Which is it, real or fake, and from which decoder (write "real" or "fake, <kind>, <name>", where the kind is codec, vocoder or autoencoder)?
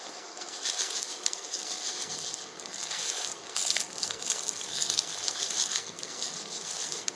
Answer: fake, codec, SNAC